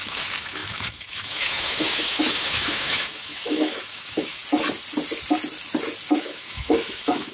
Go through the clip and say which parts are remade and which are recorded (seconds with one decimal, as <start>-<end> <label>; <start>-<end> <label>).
0.0-4.4 remade; 4.4-6.2 recorded; 6.2-7.3 remade